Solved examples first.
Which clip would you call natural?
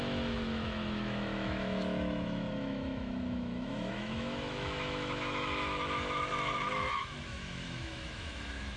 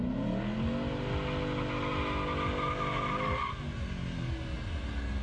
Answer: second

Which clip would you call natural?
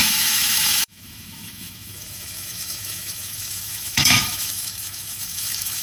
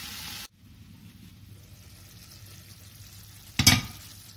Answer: second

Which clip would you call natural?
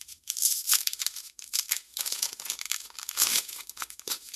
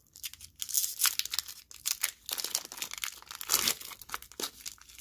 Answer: second